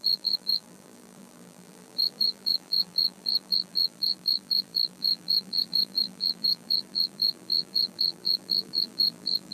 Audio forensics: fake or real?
fake